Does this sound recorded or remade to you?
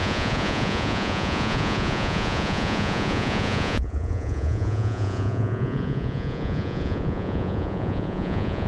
remade